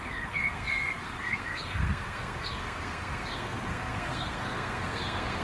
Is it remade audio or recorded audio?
remade